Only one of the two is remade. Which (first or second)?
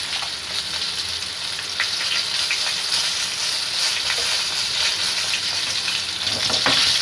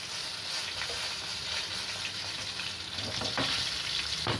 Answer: second